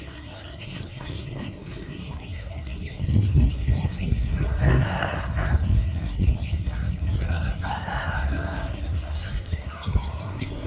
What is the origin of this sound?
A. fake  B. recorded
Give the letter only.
A